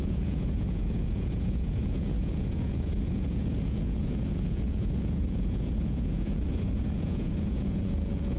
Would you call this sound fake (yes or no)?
yes